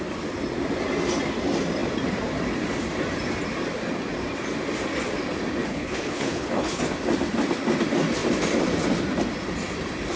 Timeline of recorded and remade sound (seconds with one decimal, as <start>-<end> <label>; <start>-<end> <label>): 0.0-5.7 recorded; 5.7-6.8 remade; 6.8-10.2 recorded